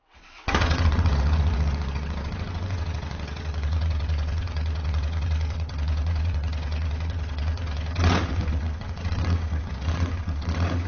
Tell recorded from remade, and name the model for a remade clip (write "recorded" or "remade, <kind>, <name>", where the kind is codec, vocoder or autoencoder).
remade, vocoder, WaveNeXt